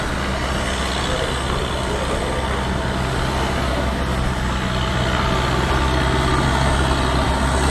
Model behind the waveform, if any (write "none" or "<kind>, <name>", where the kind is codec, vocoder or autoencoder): none